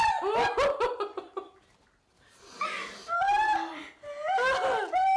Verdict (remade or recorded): recorded